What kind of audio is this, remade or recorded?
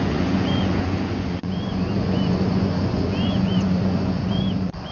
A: remade